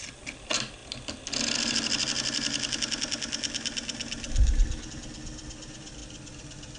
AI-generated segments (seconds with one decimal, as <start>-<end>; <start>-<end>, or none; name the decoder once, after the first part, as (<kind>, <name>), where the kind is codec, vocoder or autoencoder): none